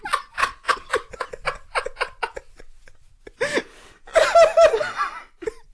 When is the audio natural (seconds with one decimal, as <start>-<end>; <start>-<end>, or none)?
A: 0.0-0.4; 0.9-5.7